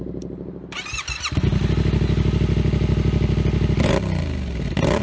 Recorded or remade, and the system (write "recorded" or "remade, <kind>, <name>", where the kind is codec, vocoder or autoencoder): recorded